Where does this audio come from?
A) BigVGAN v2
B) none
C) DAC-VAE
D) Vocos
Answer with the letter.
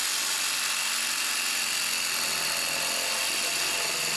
B